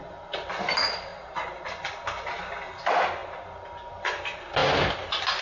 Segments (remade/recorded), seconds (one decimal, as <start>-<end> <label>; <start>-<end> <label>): 0.0-5.4 recorded